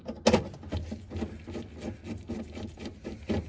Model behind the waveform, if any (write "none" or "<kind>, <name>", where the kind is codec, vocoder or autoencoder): none